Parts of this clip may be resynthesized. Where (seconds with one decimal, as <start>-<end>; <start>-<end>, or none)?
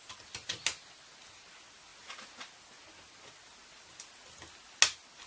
none